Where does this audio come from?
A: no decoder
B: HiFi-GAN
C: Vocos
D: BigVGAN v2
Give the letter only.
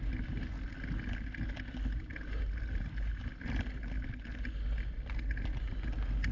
A